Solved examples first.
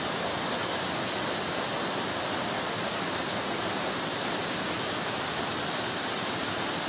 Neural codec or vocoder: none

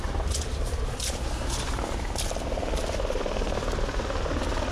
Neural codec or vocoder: none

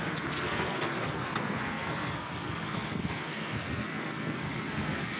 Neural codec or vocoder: codec, SNAC